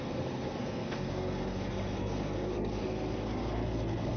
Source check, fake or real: fake